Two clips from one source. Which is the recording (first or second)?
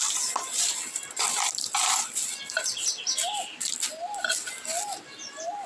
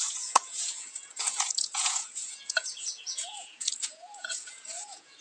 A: first